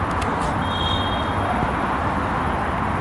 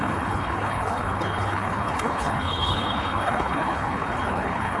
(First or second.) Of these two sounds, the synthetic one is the second